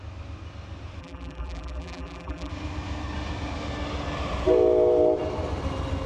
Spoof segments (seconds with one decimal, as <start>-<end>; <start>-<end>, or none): 1.0-2.5

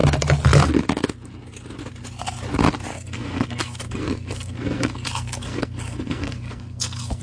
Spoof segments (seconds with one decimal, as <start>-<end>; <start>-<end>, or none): 2.9-7.2

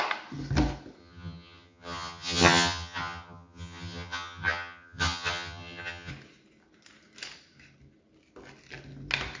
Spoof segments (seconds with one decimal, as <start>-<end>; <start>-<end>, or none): 1.0-6.1